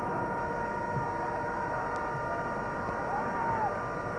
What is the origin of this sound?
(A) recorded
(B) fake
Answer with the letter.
A